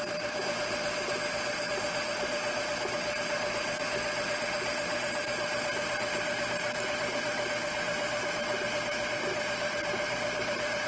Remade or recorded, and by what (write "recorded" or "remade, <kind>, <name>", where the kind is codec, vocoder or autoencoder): recorded